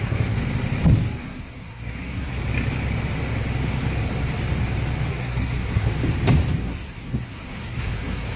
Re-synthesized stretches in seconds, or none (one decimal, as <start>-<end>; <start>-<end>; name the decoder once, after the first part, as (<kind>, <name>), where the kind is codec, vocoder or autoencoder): 0.0-0.4 (codec, SNAC); 1.2-2.4; 5.1-5.9; 6.6-8.4